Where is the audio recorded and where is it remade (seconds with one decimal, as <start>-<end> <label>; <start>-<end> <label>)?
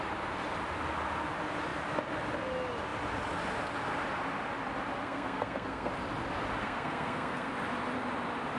0.0-5.0 recorded; 5.0-5.9 remade; 5.9-6.6 recorded; 6.6-7.5 remade; 7.5-8.6 recorded